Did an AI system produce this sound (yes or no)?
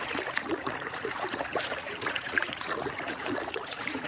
yes